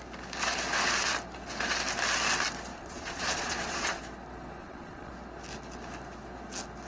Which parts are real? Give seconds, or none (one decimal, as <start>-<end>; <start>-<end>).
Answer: 0.0-2.7; 4.0-4.6; 5.1-6.9